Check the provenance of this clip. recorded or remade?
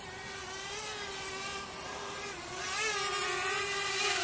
recorded